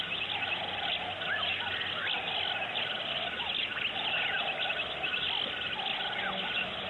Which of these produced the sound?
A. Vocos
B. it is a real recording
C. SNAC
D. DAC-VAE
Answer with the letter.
B